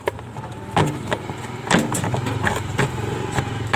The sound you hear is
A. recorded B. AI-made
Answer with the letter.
A